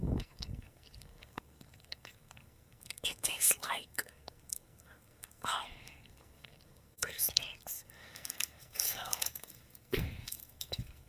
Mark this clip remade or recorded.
remade